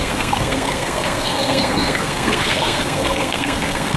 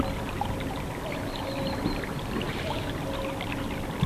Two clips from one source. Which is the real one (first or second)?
second